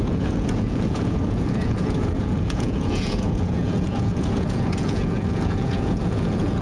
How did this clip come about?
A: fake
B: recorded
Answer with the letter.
A